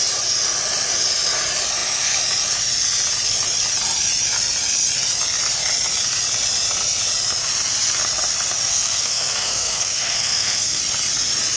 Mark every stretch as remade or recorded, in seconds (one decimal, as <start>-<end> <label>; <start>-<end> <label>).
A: 0.0-8.7 recorded; 8.7-10.8 remade; 10.8-11.6 recorded